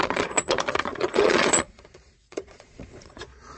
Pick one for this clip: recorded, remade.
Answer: remade